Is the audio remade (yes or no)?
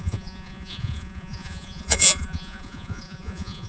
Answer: yes